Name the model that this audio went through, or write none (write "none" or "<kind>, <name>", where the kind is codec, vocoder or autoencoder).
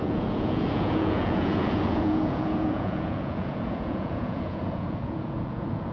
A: vocoder, Vocos